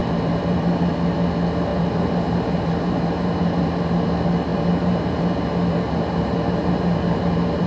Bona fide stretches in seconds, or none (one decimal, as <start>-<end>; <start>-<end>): 0.9-1.7; 3.7-4.5